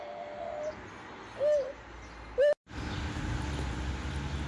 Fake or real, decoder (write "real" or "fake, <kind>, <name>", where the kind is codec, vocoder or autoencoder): real